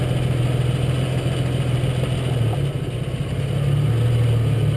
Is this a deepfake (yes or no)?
no